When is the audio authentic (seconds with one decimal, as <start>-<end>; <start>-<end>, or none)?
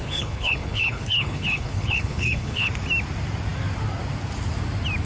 2.7-5.1